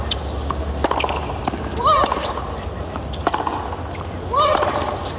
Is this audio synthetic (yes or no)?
no